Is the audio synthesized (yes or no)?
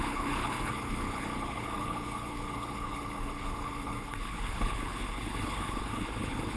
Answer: yes